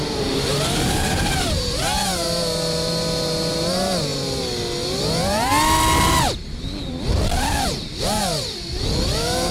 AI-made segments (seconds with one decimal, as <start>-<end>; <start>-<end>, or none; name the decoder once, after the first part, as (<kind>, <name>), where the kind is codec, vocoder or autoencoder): 0.0-4.1 (vocoder, BigVGAN v2); 5.0-5.5; 6.9-8.2; 9.0-9.5